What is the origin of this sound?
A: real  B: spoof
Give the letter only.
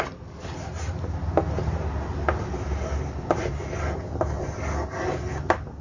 A